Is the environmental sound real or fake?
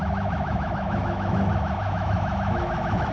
fake